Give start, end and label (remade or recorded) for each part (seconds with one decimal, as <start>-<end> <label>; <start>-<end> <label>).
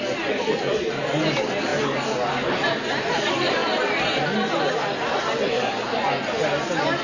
0.0-7.0 recorded